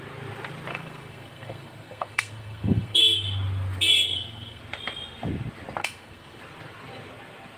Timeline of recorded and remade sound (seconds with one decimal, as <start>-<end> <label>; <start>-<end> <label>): 0.0-0.7 recorded; 0.7-3.0 remade; 3.0-3.9 recorded; 3.9-4.6 remade; 4.6-5.8 recorded; 5.8-6.4 remade; 6.4-7.6 recorded